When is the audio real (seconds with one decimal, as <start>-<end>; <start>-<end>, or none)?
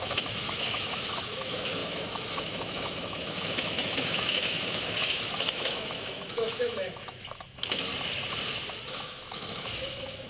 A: 7.9-8.9